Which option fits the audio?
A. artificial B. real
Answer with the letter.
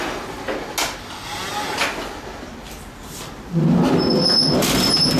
B